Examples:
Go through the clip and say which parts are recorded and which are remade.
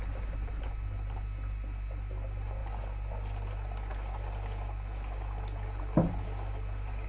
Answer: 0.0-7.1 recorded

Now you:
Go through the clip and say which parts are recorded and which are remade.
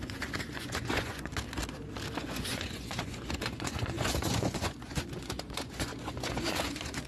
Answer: 0.0-1.3 remade; 1.3-2.2 recorded; 2.2-7.1 remade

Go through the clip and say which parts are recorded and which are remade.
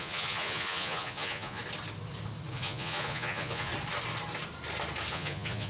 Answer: 0.0-1.6 remade; 1.6-2.5 recorded; 2.5-3.7 remade; 3.7-5.1 recorded; 5.1-5.7 remade